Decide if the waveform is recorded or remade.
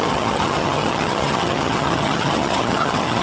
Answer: remade